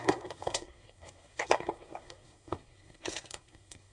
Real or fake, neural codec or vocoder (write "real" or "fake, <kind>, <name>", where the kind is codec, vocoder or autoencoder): fake, codec, SNAC